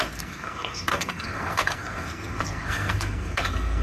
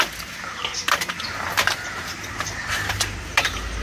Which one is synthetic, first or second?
first